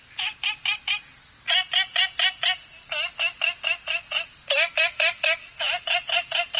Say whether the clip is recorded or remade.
recorded